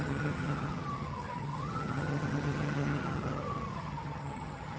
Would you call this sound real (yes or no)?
no